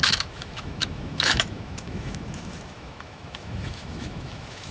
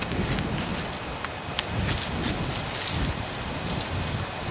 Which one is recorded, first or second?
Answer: second